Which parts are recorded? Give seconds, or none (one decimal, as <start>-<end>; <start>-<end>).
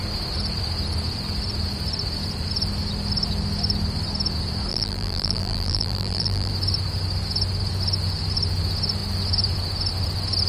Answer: 0.0-4.7; 6.5-10.5